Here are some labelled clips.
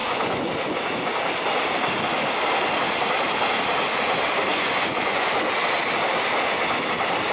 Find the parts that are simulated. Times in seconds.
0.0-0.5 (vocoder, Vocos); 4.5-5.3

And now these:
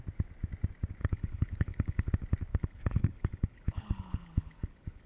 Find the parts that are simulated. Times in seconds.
1.0-2.1 (codec, HILCodec); 2.5-5.1

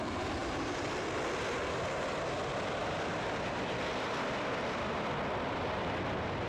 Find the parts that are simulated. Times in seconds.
none

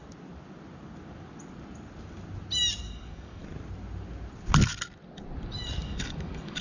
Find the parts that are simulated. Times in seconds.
2.8-3.4 (codec, DAC); 5.8-6.6